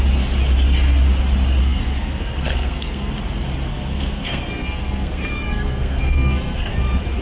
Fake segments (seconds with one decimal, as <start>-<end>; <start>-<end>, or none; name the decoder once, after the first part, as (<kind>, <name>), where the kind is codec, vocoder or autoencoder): 1.6-3.1 (codec, SNAC); 3.7-6.7